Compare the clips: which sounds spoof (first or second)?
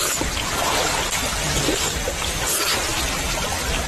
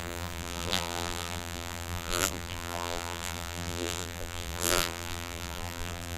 second